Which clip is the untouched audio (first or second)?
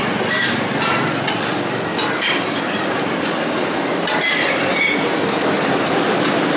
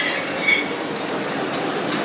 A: second